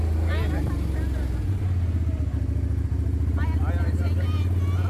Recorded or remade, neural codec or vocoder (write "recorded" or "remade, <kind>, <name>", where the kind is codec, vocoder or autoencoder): recorded